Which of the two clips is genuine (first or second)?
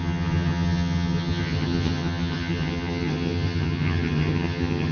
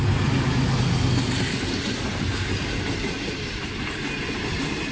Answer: second